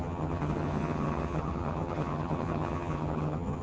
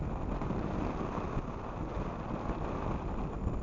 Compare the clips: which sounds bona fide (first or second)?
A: second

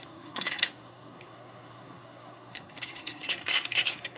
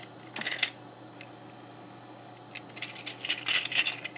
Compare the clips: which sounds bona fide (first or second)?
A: second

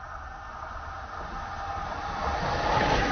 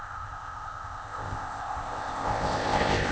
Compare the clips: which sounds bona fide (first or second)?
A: first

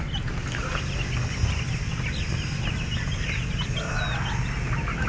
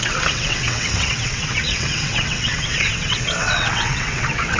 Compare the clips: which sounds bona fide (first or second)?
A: first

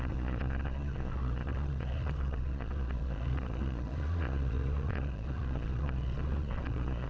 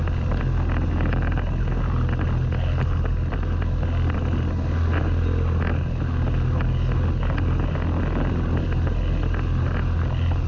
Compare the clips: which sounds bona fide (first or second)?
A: second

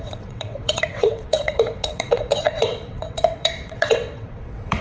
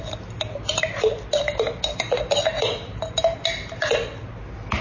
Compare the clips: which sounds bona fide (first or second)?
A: second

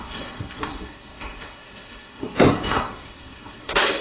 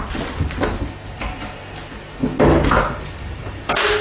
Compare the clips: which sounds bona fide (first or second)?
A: second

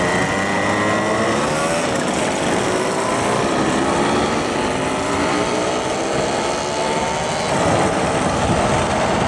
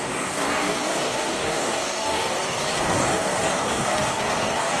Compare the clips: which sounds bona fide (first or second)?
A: first